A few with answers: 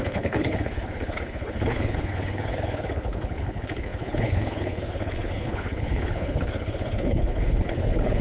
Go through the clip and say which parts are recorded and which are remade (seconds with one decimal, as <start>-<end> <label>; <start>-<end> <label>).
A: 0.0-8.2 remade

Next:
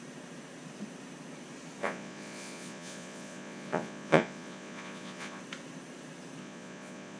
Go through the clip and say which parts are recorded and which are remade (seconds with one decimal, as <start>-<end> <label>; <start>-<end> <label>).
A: 0.0-1.8 recorded; 1.8-5.4 remade; 5.4-6.4 recorded; 6.4-7.2 remade

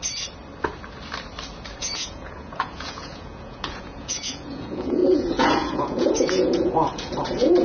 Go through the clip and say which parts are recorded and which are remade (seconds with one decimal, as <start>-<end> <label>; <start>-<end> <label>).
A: 0.0-1.8 recorded; 1.8-7.6 remade

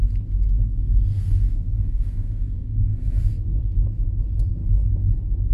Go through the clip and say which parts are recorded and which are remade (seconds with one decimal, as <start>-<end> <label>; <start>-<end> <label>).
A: 0.0-1.1 recorded; 1.1-3.6 remade; 3.6-5.5 recorded

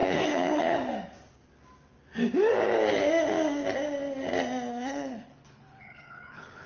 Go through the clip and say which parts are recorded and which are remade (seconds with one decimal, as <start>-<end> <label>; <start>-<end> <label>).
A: 0.0-0.9 remade; 0.9-4.7 recorded; 4.7-6.7 remade